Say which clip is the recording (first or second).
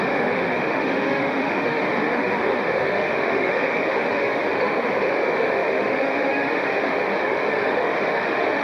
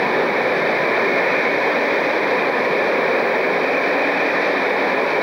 second